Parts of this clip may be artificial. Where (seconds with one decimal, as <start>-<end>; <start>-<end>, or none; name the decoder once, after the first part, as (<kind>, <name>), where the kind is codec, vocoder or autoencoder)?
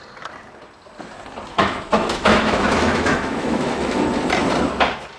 1.5-4.0 (autoencoder, DAC-VAE)